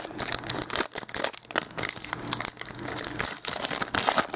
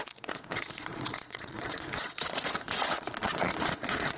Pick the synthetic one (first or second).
second